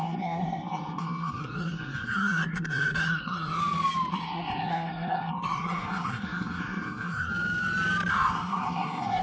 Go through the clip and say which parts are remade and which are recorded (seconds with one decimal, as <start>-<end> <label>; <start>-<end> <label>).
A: 0.0-3.6 remade; 3.6-4.1 recorded; 4.1-7.3 remade; 7.3-8.1 recorded; 8.1-9.2 remade